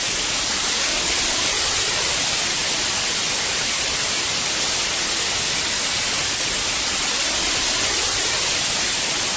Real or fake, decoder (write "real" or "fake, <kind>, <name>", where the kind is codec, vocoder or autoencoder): real